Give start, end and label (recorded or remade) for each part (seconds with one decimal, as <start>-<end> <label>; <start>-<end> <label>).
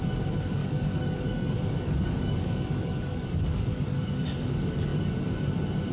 0.0-0.6 recorded; 0.6-4.1 remade; 4.1-5.9 recorded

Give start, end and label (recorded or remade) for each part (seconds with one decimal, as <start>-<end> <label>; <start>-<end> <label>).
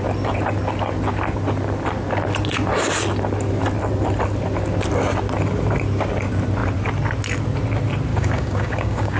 0.0-8.1 recorded; 8.1-9.2 remade